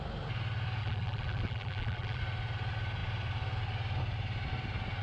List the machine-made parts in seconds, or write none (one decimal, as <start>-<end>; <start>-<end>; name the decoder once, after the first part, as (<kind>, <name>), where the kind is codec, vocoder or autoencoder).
0.8-2.2 (vocoder, BigVGAN v2)

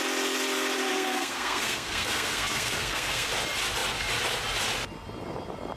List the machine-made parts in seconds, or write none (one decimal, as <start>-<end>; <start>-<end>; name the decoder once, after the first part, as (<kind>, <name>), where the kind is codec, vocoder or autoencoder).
0.9-3.3 (codec, SNAC)

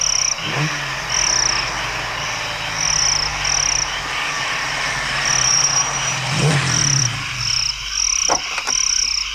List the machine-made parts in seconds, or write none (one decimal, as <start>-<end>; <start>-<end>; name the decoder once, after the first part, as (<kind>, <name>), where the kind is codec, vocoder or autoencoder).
6.4-7.0 (vocoder, BigVGAN v2)

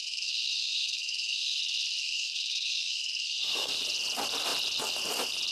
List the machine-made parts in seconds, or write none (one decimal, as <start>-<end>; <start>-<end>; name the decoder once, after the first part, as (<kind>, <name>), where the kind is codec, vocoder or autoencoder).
0.0-1.6 (codec, SNAC); 2.0-3.7

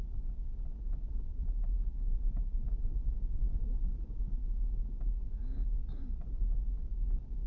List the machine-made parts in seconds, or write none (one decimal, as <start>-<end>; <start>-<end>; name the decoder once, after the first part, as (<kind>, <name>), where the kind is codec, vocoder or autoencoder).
1.3-2.8 (vocoder, BigVGAN v2); 5.8-6.3